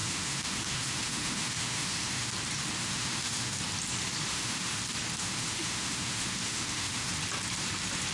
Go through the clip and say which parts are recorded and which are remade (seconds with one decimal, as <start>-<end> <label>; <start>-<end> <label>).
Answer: 0.0-2.3 remade; 2.3-2.8 recorded; 2.8-3.6 remade; 3.6-4.3 recorded; 4.3-4.8 remade; 4.8-5.2 recorded; 5.2-7.1 remade; 7.1-8.1 recorded